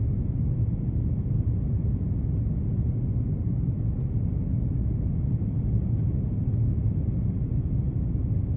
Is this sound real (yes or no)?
yes